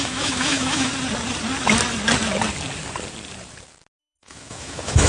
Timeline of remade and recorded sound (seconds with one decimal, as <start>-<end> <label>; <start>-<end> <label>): 0.0-0.9 remade; 0.9-4.0 recorded; 4.0-5.1 remade